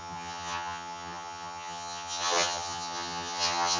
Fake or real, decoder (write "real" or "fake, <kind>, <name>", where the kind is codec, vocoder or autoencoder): fake, vocoder, HiFi-GAN